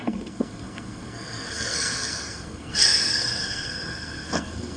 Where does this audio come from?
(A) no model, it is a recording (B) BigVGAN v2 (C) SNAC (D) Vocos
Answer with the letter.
C